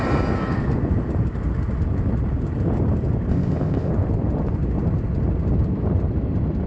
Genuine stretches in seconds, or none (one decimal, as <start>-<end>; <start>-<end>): 0.0-3.3; 3.9-6.7